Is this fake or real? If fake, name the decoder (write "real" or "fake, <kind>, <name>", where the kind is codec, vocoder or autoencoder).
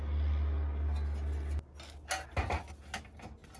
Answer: real